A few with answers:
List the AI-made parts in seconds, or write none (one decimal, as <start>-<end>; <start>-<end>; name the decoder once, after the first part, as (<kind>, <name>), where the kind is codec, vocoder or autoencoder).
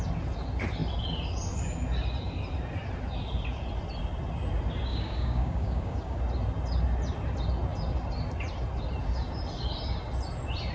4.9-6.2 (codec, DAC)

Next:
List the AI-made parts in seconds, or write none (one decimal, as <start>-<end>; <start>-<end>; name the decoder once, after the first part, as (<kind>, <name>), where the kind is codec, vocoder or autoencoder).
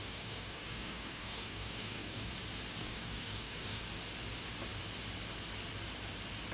0.0-2.3 (codec, DAC); 2.8-3.8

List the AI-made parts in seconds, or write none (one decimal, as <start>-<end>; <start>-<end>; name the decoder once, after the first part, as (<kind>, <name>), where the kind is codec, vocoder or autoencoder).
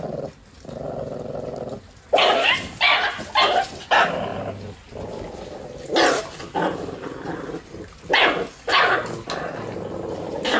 none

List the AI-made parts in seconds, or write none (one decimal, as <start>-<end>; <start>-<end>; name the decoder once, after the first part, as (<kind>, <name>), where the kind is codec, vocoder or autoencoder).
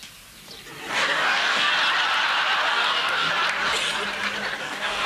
0.9-1.7 (codec, DAC); 2.7-3.3; 4.6-5.1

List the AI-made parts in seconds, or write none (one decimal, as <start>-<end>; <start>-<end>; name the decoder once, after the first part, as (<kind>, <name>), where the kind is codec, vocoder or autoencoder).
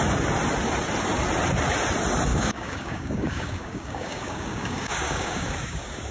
2.3-6.1 (codec, DAC)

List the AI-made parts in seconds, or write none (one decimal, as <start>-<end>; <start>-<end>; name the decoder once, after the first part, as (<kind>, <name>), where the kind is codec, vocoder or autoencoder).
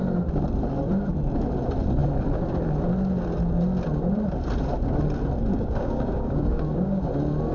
5.5-7.0 (codec, DAC)